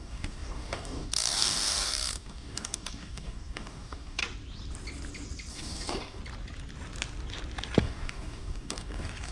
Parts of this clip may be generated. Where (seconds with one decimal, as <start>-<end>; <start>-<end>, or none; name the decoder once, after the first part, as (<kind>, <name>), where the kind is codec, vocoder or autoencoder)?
0.0-4.2 (codec, DAC); 5.5-6.2; 7.8-9.3